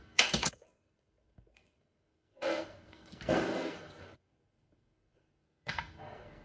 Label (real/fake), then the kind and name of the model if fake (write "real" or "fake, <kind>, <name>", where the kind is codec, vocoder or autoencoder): fake, codec, SNAC